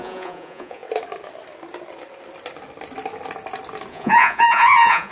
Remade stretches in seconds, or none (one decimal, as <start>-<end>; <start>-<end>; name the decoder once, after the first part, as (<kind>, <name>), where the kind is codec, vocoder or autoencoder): 0.0-0.8 (vocoder, Vocos); 3.9-5.1